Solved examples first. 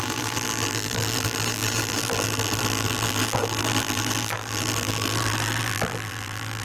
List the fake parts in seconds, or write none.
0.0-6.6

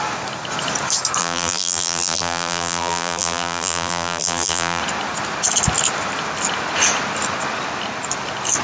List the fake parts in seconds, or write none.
1.2-4.8

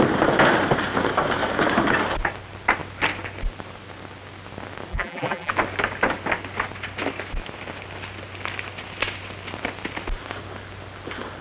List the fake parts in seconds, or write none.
4.9-5.5

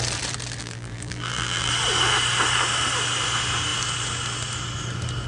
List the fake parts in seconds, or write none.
0.6-1.7

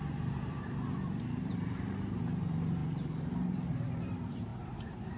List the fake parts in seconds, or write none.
0.0-5.2

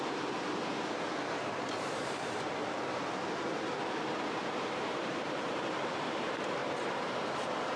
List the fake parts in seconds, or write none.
0.0-2.6; 4.8-6.6; 7.2-7.8

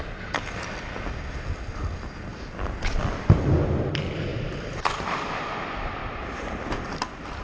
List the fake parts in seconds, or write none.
2.3-3.8; 4.3-5.3; 6.0-6.6

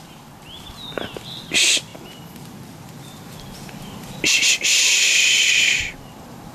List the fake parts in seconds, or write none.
0.0-6.5